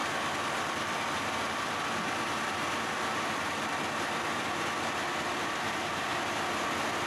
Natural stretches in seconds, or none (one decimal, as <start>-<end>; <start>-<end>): 6.1-7.1